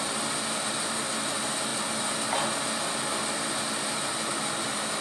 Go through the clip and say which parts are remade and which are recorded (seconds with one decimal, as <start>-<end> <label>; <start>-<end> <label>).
0.0-5.0 recorded